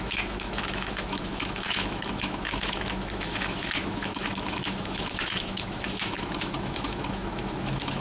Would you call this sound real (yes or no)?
no